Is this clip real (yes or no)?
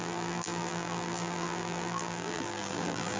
no